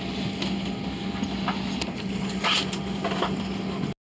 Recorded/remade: recorded